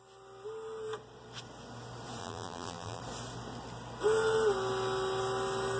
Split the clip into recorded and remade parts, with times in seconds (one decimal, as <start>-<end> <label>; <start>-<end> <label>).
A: 0.0-2.2 recorded; 2.2-3.0 remade; 3.0-5.8 recorded